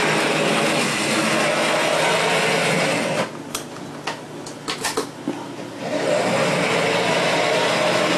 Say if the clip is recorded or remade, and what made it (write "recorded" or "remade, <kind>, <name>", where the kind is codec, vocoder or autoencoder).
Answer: recorded